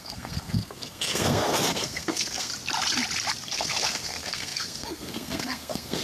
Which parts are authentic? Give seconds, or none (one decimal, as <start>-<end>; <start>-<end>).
2.5-3.4